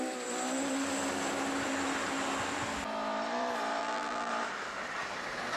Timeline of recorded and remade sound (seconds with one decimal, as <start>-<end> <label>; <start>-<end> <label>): 0.0-3.8 recorded; 3.8-4.3 remade; 4.3-5.6 recorded